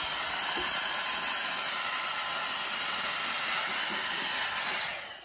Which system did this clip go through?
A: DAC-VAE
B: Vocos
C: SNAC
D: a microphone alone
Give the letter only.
D